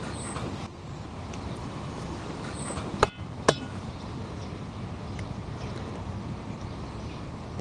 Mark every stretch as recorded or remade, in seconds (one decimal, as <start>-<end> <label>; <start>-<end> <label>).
0.0-1.6 recorded; 1.6-2.2 remade; 2.2-7.6 recorded